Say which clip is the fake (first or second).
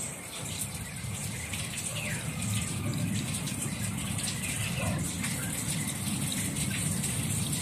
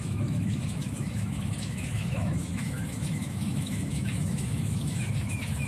second